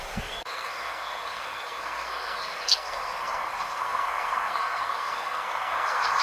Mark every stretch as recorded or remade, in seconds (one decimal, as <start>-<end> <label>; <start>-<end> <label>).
0.0-6.2 remade